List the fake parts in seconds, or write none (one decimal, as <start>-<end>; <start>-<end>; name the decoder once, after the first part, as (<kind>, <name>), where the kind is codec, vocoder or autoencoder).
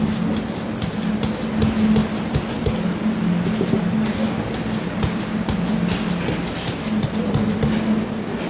none